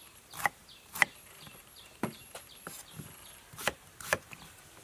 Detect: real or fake fake